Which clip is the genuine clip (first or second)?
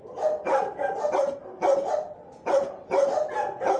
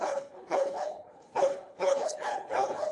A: first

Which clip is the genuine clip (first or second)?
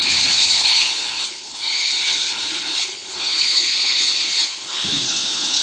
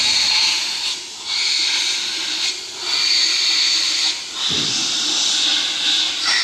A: second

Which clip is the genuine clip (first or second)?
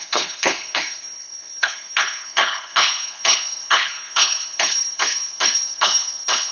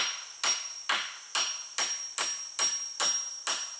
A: second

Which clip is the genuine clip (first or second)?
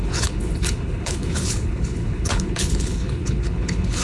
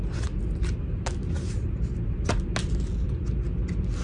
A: second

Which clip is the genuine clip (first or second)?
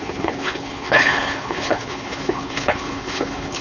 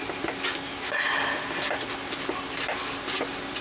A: second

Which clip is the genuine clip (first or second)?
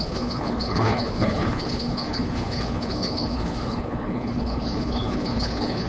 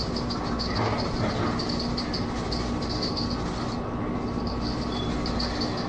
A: second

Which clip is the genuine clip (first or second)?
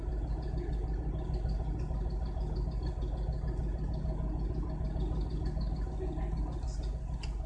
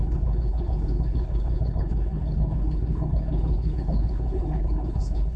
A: first